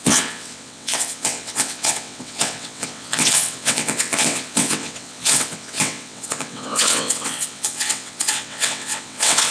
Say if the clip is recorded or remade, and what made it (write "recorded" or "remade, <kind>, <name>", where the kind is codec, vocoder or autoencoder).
remade, vocoder, WaveNeXt